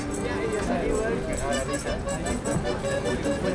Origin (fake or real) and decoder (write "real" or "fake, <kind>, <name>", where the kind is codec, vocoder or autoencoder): real